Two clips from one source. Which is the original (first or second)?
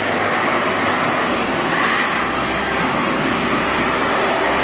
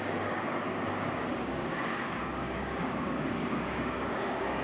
first